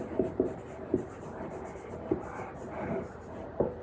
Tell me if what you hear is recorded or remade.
recorded